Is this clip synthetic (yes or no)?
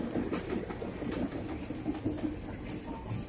no